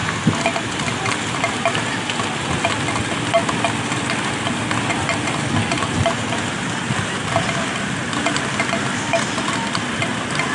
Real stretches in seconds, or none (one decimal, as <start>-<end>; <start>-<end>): 0.0-10.5